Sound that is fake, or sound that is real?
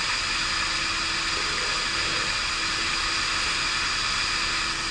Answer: real